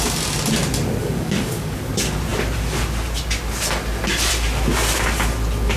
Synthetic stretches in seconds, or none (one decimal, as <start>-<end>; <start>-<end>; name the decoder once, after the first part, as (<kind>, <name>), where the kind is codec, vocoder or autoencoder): 1.0-1.8 (codec, DAC)